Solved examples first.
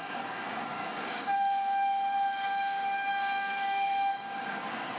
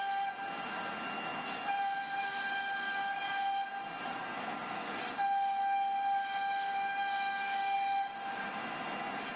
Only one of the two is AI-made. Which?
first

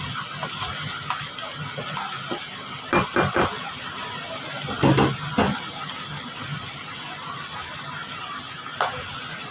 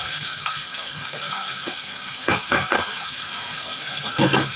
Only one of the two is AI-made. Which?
second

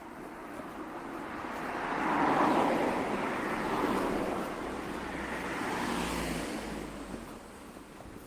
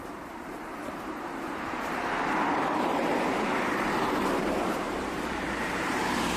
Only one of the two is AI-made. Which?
second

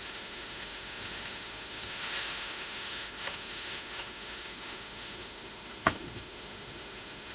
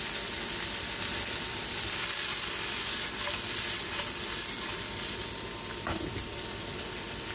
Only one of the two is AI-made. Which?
first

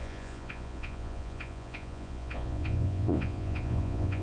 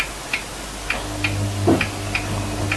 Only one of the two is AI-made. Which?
first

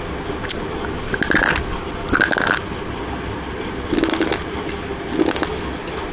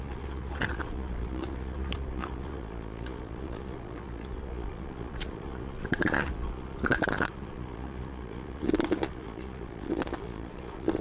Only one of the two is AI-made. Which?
second